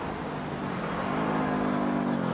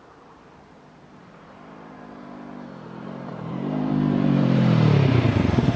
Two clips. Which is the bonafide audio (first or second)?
first